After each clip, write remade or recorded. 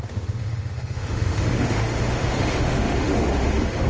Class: remade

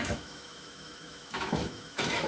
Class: remade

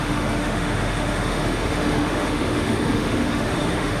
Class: remade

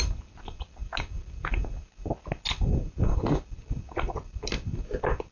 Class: recorded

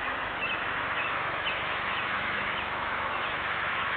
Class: remade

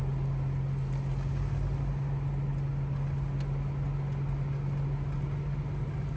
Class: recorded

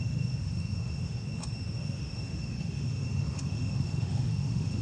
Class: remade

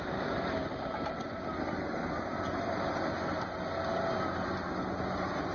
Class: recorded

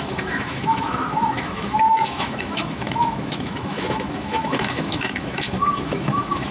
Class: remade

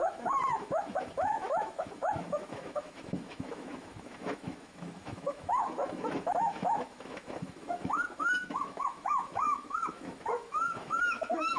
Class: remade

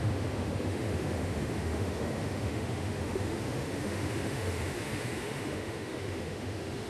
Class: remade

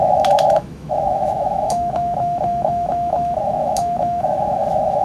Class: remade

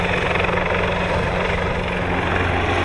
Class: recorded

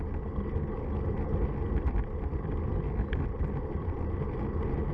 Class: recorded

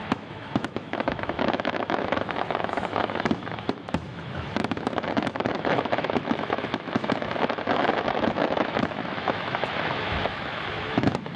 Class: remade